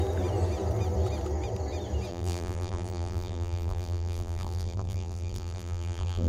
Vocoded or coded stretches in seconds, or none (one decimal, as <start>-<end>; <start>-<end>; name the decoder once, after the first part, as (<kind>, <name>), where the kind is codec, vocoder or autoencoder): 2.1-6.3 (vocoder, BigVGAN v2)